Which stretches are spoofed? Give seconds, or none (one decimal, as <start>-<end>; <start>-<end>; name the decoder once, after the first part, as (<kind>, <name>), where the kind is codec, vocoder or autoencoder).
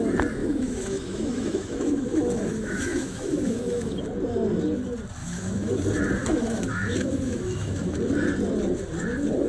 0.4-4.0 (autoencoder, DAC-VAE); 5.2-5.8; 6.2-8.0